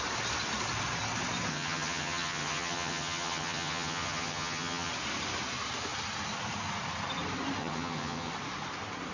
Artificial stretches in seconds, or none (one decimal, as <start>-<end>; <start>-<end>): 1.5-4.9; 7.6-8.3